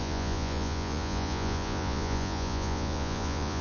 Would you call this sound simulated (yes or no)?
yes